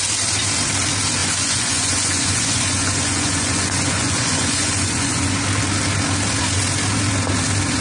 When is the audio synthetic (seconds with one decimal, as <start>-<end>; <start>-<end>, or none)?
1.2-5.3